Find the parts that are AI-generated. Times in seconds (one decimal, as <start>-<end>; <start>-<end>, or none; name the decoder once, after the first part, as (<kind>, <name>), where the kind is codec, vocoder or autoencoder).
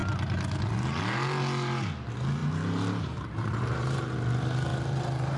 2.4-4.0 (vocoder, BigVGAN v2); 4.7-5.4